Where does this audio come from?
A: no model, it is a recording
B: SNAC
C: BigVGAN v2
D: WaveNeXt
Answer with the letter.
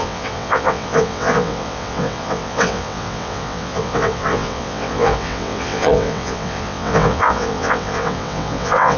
D